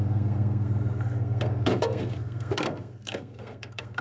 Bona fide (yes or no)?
no